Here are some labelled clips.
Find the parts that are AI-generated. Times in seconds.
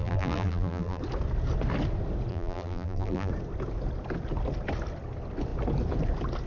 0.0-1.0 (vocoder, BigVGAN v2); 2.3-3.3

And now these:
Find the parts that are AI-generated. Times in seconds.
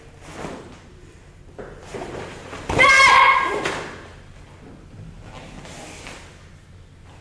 1.9-4.7 (vocoder, BigVGAN v2)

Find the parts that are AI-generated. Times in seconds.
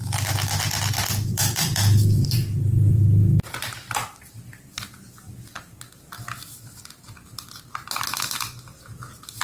1.3-5.6 (vocoder, BigVGAN v2)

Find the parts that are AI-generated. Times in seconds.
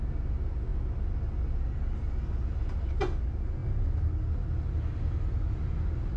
none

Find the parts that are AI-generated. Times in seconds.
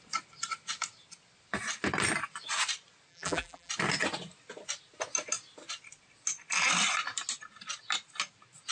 3.1-3.7 (vocoder, BigVGAN v2)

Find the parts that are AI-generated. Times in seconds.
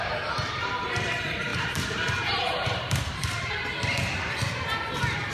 1.5-3.5 (vocoder, BigVGAN v2)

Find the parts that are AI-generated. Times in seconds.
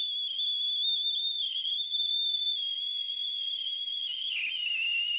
none